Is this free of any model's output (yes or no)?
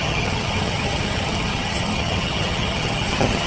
no